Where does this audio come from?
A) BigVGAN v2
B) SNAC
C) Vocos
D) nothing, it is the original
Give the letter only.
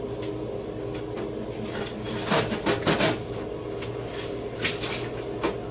D